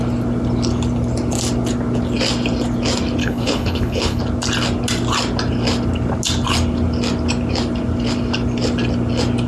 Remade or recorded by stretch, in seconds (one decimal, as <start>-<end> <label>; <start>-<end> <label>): 0.0-3.2 recorded; 3.2-4.2 remade; 4.2-9.5 recorded